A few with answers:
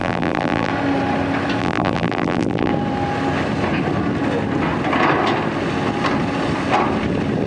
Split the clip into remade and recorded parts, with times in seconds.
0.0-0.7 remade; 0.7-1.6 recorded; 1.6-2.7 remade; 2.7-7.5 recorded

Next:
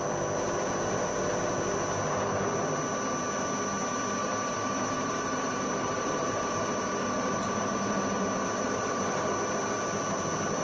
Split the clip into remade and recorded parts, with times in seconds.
0.0-4.2 recorded; 4.2-9.3 remade; 9.3-10.6 recorded

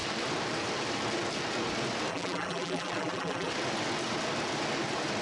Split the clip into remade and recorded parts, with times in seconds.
0.0-2.1 recorded; 2.1-3.5 remade; 3.5-5.2 recorded

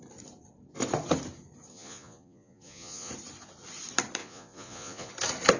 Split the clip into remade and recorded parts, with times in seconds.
0.0-1.7 recorded; 1.7-3.1 remade; 3.1-4.2 recorded; 4.2-5.1 remade; 5.1-5.6 recorded

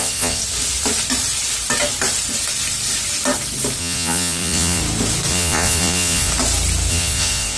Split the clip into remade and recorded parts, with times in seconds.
0.0-0.4 remade; 0.4-3.8 recorded; 3.8-4.8 remade; 4.8-5.3 recorded; 5.3-6.3 remade; 6.3-6.9 recorded; 6.9-7.6 remade

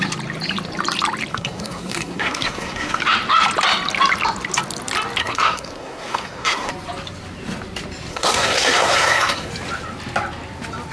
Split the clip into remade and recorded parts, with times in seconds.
0.0-1.3 recorded; 1.3-3.0 remade; 3.0-5.2 recorded; 5.2-6.7 remade; 6.7-8.1 recorded; 8.1-9.5 remade; 9.5-10.9 recorded

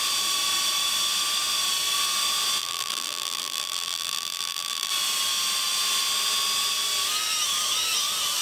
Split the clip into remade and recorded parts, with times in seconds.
0.0-2.6 recorded; 2.6-4.9 remade; 4.9-8.4 recorded

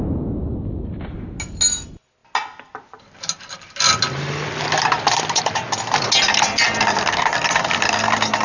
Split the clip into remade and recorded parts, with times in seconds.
0.0-8.4 recorded